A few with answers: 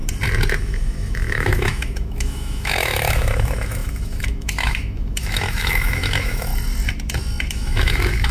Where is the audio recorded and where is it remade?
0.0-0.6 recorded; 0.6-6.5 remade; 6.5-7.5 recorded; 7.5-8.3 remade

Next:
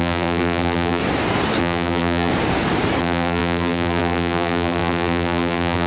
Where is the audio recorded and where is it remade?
0.0-1.0 remade; 1.0-1.6 recorded; 1.6-2.3 remade; 2.3-3.0 recorded; 3.0-5.9 remade

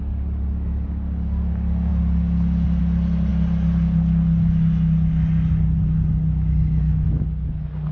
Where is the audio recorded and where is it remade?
0.0-7.9 recorded

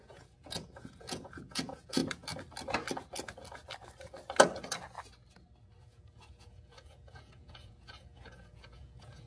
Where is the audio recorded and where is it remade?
0.0-2.0 remade; 2.0-5.8 recorded; 5.8-9.3 remade

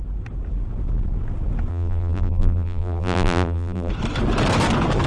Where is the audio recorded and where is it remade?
0.0-1.7 recorded; 1.7-3.9 remade; 3.9-5.1 recorded